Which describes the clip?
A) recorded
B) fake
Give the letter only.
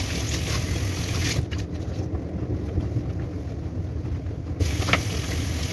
A